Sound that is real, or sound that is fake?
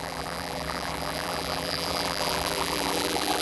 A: fake